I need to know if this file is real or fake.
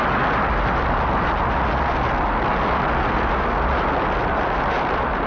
real